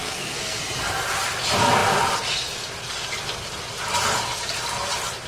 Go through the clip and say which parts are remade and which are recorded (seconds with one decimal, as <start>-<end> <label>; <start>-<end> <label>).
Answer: 0.0-0.6 remade; 0.6-5.3 recorded